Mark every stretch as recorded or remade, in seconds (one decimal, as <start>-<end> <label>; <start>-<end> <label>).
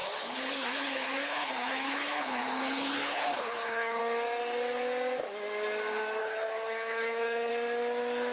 0.0-4.0 remade; 4.0-6.2 recorded; 6.2-7.5 remade; 7.5-8.3 recorded